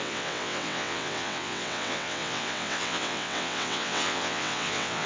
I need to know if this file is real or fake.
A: fake